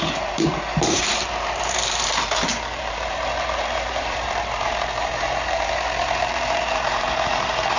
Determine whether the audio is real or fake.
fake